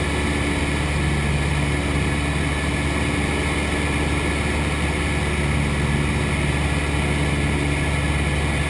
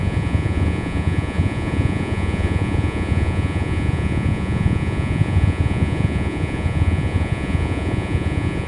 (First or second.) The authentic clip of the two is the first